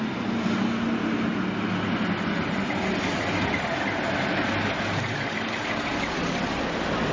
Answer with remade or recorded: recorded